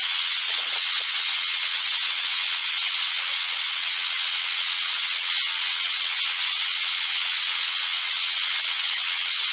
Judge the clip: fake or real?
fake